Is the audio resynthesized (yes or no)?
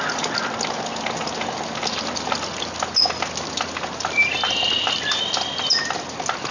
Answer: no